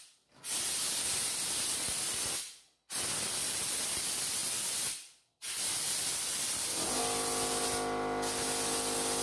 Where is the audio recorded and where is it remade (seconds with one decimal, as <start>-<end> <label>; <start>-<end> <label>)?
0.0-9.2 recorded

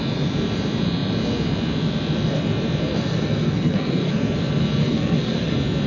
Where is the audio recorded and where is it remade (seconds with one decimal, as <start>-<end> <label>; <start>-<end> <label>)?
0.0-2.9 recorded; 2.9-4.1 remade; 4.1-4.8 recorded; 4.8-5.5 remade; 5.5-5.9 recorded

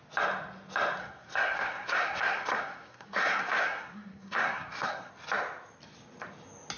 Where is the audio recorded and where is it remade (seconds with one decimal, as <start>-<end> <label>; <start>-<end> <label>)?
0.0-1.0 recorded; 1.0-5.1 remade; 5.1-6.8 recorded

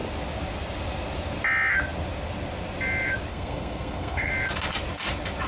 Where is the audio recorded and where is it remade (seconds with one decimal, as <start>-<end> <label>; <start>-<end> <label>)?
0.0-3.3 recorded; 3.3-4.3 remade; 4.3-5.5 recorded

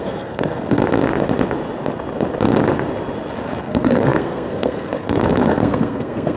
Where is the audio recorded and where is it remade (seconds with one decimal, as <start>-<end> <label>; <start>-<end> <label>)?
0.0-0.8 remade; 0.8-3.6 recorded; 3.6-6.4 remade

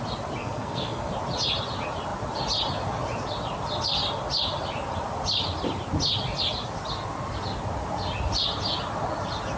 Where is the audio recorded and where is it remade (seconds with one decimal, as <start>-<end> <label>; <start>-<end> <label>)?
0.0-0.4 recorded; 0.4-1.1 remade; 1.1-9.6 recorded

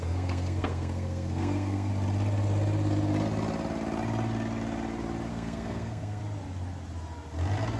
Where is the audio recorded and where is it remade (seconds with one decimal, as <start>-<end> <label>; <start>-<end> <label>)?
0.0-1.9 remade; 1.9-5.3 recorded; 5.3-6.2 remade; 6.2-7.8 recorded

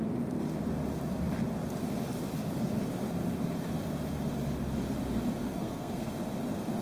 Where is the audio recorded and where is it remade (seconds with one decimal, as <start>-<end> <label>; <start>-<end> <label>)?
0.0-5.4 recorded; 5.4-6.1 remade; 6.1-6.8 recorded